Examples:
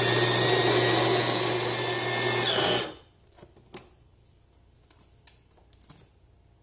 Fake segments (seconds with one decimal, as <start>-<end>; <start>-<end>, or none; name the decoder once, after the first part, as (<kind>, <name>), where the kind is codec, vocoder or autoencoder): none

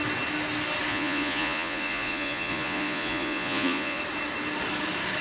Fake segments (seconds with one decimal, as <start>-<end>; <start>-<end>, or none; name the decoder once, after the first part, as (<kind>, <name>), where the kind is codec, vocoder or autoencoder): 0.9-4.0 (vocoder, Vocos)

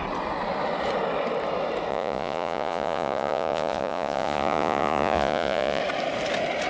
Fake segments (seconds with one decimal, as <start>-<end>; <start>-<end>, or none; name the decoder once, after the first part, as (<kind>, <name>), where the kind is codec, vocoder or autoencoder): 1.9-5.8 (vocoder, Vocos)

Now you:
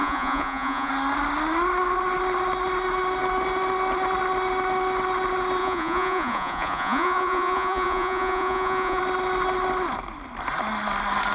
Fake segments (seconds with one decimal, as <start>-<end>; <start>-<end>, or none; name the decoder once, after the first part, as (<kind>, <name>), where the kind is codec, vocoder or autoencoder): 0.0-0.9 (vocoder, Vocos); 5.6-9.0

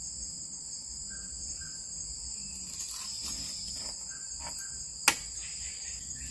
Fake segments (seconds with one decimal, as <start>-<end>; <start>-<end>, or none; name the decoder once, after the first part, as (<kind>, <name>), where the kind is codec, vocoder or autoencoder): none